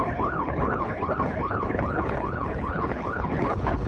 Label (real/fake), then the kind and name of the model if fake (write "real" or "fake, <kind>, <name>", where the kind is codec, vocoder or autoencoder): fake, codec, HILCodec